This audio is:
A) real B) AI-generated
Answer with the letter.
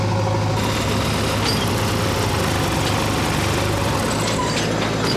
A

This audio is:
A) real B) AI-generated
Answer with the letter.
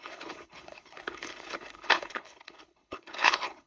B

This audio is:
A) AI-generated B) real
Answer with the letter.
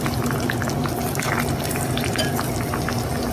A